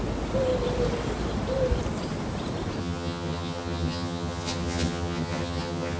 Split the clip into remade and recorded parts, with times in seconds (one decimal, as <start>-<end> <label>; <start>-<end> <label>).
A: 0.0-2.8 recorded; 2.8-6.0 remade